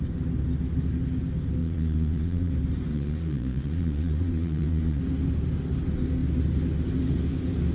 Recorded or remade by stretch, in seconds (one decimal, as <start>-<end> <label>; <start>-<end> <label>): 0.0-1.6 recorded; 1.6-2.5 remade; 2.5-2.9 recorded; 2.9-5.0 remade; 5.0-7.7 recorded